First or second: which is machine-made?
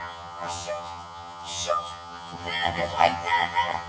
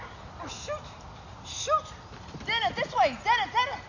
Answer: first